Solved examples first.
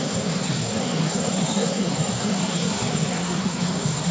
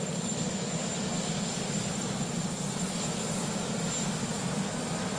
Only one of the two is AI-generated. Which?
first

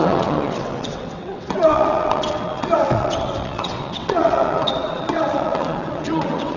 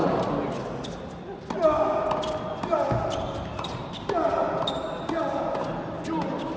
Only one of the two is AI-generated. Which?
first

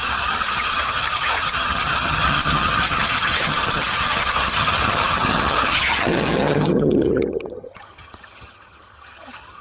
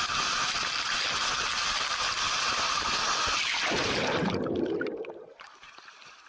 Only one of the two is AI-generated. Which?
first